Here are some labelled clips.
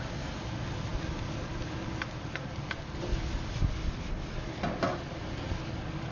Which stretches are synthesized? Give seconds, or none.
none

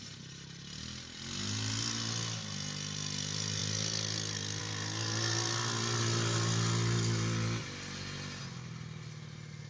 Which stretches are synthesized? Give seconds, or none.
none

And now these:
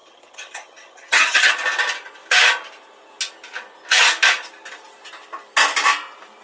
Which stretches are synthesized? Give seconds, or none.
0.0-1.5 (vocoder, HiFi-GAN)